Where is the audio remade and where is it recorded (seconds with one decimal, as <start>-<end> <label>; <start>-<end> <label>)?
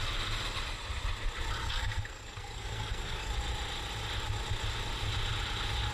0.0-1.6 recorded; 1.6-3.3 remade; 3.3-5.9 recorded